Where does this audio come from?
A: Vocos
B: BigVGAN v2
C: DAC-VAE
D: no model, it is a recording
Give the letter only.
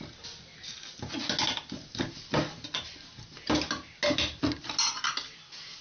D